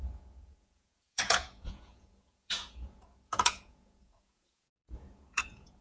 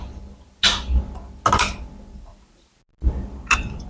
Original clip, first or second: second